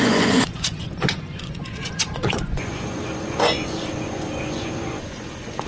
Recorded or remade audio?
remade